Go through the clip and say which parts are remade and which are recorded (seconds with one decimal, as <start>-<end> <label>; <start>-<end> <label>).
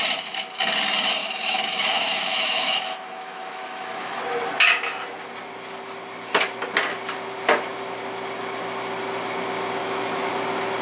0.0-1.2 recorded; 1.2-4.2 remade; 4.2-9.8 recorded; 9.8-10.3 remade; 10.3-10.8 recorded